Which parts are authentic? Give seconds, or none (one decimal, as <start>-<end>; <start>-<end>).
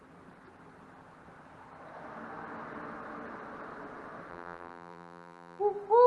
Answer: 0.0-4.3; 5.6-6.1